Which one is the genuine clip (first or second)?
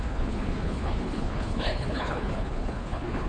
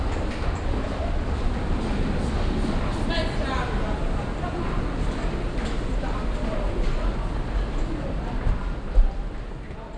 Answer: second